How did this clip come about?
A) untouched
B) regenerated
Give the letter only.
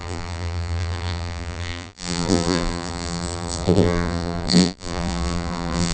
B